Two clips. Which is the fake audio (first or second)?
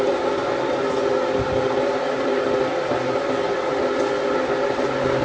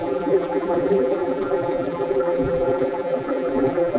second